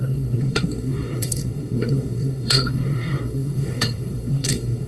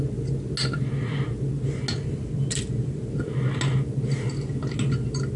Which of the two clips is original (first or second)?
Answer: second